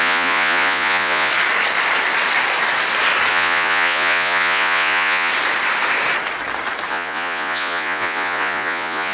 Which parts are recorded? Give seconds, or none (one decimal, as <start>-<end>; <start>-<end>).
1.3-3.3; 5.3-6.9